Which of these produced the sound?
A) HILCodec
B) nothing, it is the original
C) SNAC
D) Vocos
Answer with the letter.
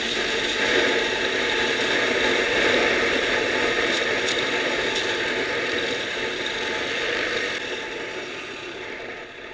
B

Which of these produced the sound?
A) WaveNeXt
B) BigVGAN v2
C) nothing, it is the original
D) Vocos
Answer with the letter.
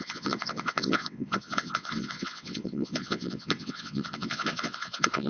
A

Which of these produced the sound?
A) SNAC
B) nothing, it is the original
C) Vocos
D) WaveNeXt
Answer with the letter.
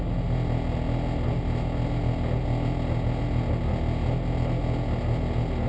B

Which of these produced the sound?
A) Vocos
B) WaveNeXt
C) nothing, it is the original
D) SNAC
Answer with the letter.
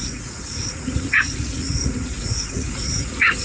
A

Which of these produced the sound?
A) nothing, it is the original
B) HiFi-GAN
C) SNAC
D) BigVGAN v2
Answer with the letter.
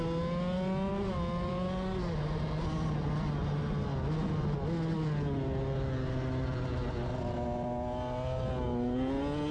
A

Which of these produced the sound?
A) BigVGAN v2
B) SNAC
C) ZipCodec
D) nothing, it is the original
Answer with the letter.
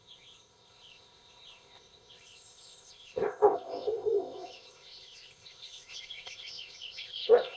C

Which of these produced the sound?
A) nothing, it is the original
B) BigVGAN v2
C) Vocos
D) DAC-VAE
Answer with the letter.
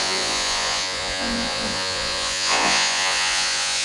C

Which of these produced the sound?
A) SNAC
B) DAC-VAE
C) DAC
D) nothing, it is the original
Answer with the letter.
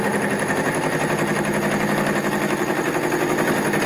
D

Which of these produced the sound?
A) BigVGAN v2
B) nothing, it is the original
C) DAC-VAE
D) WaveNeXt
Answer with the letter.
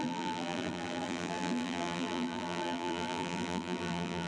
A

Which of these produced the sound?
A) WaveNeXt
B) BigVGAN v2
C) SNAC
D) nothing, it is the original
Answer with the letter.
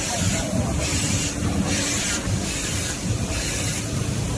B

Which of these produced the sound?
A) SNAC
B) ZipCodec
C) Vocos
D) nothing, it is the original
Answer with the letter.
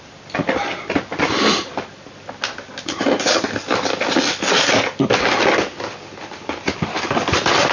D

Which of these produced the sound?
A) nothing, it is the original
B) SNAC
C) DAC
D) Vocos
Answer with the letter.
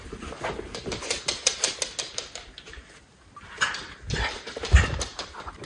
A